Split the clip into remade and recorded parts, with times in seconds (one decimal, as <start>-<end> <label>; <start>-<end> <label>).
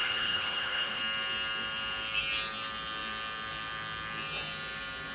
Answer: 0.0-1.0 remade; 1.0-5.1 recorded